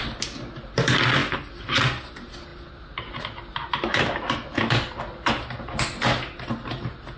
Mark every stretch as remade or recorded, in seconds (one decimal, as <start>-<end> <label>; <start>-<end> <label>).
0.0-7.2 recorded